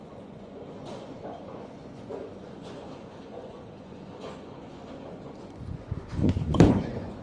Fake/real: fake